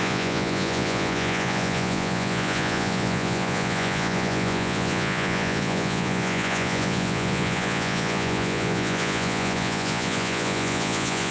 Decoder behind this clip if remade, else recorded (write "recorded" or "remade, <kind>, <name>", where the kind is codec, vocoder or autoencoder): remade, vocoder, Vocos